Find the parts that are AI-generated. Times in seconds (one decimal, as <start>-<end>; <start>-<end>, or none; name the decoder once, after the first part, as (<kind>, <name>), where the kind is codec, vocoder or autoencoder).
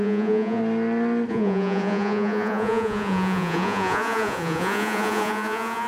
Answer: 0.0-0.6 (vocoder, Vocos); 1.3-5.9